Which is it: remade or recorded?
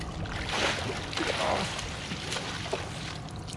recorded